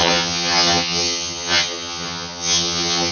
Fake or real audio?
fake